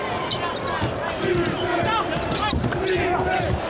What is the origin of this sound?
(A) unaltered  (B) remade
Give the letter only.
A